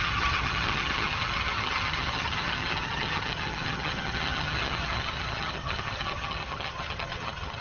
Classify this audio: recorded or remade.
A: remade